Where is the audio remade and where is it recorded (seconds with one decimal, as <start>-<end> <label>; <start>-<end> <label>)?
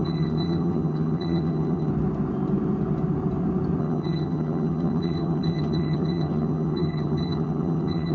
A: 0.0-1.9 remade; 1.9-3.8 recorded; 3.8-8.1 remade